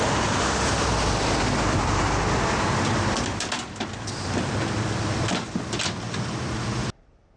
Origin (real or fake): fake